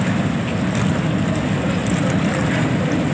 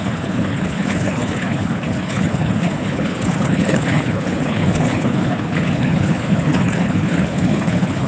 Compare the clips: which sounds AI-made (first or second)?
second